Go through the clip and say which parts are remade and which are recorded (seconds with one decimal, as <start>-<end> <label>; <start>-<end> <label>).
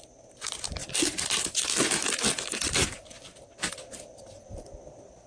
0.0-5.3 recorded